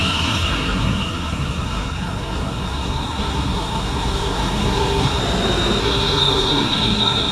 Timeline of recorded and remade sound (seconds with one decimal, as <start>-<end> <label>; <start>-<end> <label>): 0.0-5.2 remade; 5.2-5.8 recorded; 5.8-7.3 remade